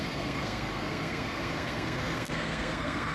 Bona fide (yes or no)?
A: no